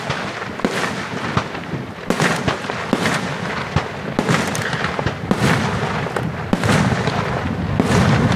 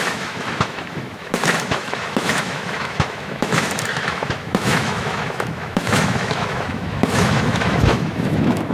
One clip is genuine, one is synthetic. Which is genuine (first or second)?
first